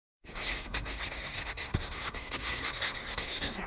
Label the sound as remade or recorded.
remade